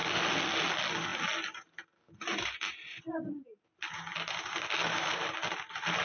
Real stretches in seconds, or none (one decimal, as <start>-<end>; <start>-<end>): 0.0-6.0